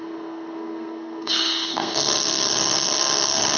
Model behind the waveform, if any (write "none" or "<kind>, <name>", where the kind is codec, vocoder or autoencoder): codec, SNAC